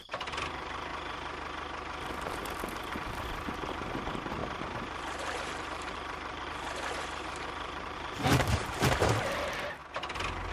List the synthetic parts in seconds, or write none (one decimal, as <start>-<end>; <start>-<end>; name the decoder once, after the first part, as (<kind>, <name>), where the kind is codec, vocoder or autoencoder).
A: 0.0-0.9 (vocoder, BigVGAN v2); 3.5-9.8